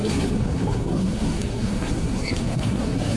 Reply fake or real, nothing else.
fake